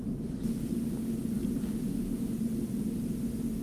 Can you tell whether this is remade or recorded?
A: recorded